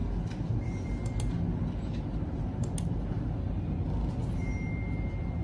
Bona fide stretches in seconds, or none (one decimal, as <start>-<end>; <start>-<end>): 0.0-5.4